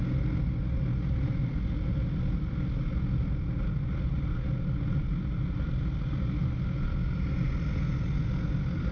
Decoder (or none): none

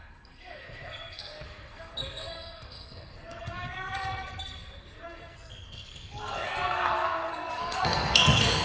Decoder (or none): codec, SNAC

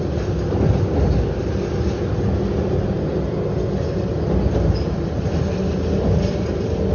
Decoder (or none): none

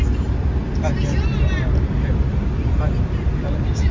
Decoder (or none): none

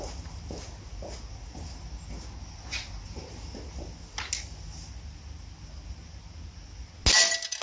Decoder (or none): none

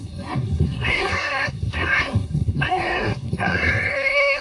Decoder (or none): codec, SNAC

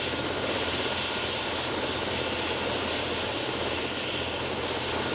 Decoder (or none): none